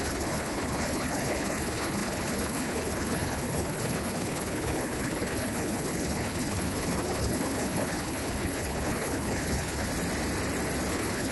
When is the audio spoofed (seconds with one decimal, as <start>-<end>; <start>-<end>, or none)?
0.0-9.9; 10.9-11.3